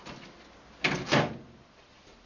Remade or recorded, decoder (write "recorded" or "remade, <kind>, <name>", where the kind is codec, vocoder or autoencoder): recorded